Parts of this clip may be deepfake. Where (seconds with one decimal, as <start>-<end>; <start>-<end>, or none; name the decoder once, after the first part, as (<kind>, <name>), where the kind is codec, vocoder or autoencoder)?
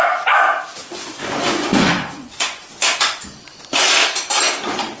0.8-3.8 (vocoder, Vocos)